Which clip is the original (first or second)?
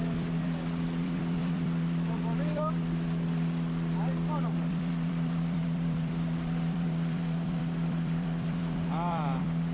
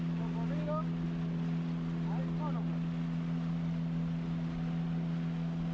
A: second